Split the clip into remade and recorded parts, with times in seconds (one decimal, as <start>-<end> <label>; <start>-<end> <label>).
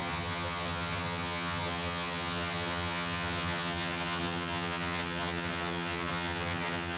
0.0-7.0 remade